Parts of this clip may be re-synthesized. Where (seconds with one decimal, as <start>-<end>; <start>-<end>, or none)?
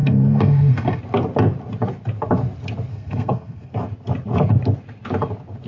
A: 0.0-1.0; 2.9-3.7